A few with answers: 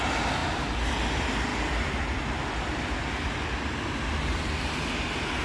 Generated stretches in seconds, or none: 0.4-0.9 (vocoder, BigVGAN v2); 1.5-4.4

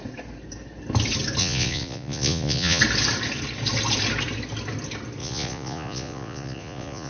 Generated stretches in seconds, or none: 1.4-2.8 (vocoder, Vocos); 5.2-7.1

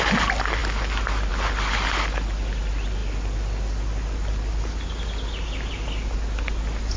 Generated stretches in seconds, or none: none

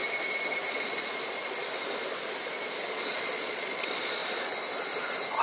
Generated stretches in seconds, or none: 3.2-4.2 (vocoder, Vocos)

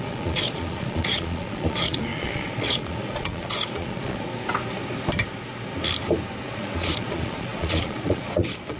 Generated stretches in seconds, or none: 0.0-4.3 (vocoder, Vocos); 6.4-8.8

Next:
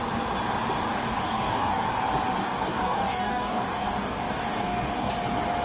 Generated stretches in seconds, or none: 0.9-1.9 (codec, DAC); 2.4-5.1